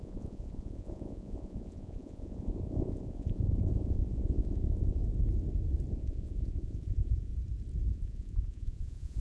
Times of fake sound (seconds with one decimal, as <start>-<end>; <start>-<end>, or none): 0.0-5.0; 5.9-7.3; 7.9-9.2

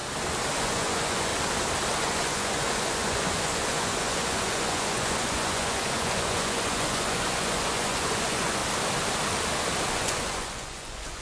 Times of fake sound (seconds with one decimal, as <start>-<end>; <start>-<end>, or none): 0.6-1.3; 2.0-8.6; 9.9-11.2